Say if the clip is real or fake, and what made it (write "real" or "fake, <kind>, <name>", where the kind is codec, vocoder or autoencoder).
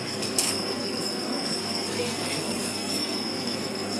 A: fake, codec, SNAC